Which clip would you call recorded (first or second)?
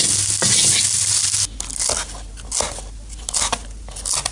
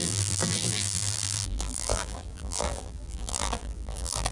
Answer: first